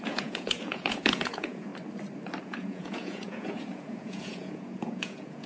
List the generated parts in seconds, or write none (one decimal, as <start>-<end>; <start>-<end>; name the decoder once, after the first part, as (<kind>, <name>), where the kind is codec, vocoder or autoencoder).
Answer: 0.0-1.7 (vocoder, Vocos); 2.4-5.5